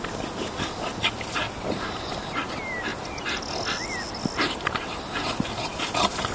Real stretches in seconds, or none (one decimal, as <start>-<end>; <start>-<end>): 0.0-6.3